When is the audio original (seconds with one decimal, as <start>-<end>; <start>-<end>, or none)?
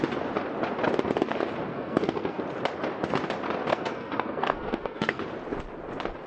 0.0-1.7; 2.4-3.7; 5.2-6.3